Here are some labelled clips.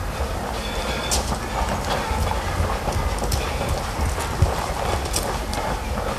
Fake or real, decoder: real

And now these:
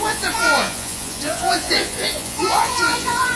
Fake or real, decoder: fake, vocoder, Vocos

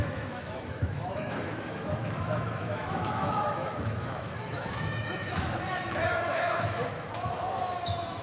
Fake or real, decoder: fake, autoencoder, DAC-VAE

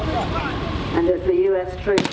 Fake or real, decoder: real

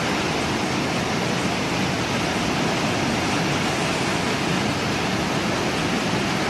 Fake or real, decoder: real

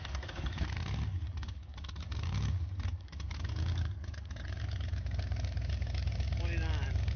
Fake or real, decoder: fake, codec, DAC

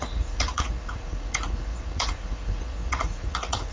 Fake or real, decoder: fake, vocoder, Vocos